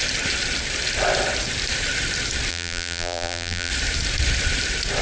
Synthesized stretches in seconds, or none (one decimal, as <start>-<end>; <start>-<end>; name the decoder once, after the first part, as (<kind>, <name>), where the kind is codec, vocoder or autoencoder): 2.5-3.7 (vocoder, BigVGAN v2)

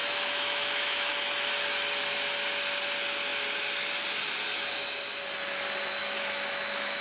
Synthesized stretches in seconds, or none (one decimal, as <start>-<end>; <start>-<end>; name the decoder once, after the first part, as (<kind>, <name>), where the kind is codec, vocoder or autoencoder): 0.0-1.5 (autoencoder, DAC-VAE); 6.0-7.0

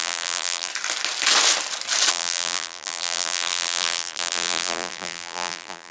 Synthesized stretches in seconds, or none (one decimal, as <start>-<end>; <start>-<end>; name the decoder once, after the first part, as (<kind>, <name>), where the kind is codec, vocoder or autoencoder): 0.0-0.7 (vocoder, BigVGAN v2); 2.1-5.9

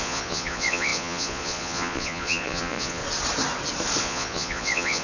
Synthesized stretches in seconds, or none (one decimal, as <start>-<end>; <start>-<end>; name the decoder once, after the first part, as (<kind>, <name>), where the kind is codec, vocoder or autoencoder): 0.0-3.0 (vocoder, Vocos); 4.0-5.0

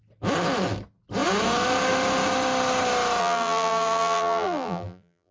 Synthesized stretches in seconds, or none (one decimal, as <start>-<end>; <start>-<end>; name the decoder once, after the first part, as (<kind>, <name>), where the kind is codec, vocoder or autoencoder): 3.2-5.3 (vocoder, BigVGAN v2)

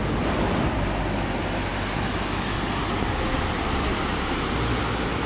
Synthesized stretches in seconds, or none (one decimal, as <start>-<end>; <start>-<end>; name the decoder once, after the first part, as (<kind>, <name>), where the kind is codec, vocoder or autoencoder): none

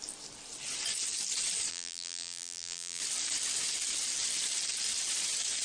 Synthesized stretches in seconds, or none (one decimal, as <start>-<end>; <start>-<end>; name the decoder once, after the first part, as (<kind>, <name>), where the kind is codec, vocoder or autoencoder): 1.7-3.0 (vocoder, BigVGAN v2)